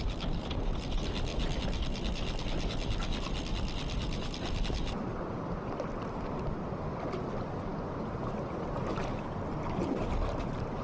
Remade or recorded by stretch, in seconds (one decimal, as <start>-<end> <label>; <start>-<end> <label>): 0.0-10.8 recorded